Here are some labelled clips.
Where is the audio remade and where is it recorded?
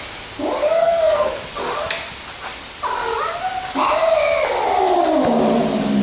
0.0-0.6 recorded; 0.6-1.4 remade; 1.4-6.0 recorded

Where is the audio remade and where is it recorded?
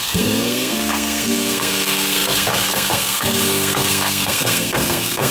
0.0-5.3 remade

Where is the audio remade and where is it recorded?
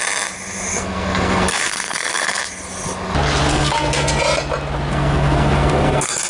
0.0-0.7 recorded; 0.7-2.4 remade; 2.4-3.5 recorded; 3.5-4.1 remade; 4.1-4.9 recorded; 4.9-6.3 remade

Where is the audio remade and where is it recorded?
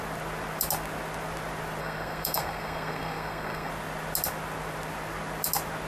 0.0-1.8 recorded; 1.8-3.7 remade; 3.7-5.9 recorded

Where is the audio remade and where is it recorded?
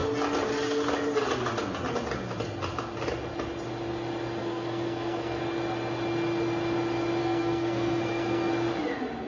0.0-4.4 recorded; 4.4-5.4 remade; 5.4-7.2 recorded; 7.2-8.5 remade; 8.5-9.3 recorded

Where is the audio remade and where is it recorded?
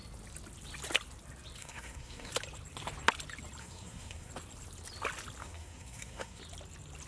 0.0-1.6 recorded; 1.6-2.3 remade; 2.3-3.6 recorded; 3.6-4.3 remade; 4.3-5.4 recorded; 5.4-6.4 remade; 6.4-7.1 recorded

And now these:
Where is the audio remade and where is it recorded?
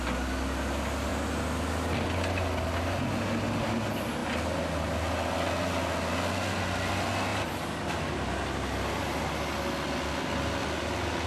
0.0-11.3 recorded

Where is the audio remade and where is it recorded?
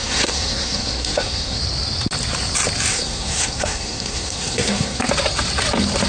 0.0-1.6 remade; 1.6-2.9 recorded; 2.9-5.0 remade; 5.0-6.1 recorded